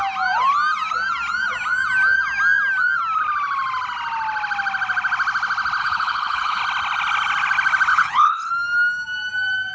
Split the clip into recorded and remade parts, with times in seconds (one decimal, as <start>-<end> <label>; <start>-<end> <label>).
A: 0.0-5.8 recorded; 5.8-6.6 remade; 6.6-7.9 recorded; 7.9-8.5 remade; 8.5-9.7 recorded